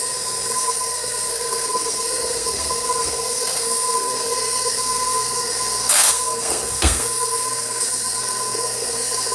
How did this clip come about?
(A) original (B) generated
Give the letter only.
B